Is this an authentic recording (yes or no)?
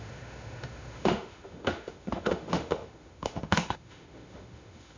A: no